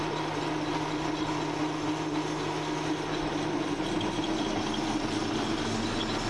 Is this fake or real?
real